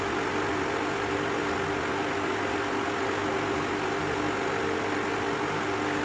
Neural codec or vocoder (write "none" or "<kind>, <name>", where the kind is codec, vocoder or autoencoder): none